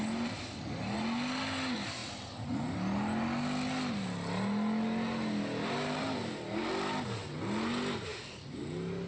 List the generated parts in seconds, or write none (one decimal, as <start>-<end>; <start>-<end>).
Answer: none